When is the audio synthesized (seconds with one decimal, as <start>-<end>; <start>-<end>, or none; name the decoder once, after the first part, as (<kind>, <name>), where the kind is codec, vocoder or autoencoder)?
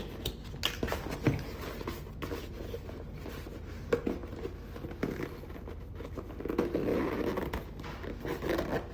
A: none